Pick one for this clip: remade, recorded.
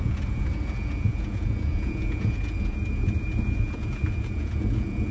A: remade